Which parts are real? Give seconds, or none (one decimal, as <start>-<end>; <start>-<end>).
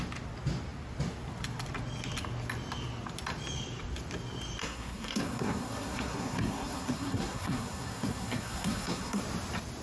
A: 0.0-4.6; 9.2-9.8